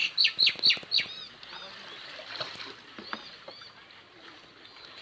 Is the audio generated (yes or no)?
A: no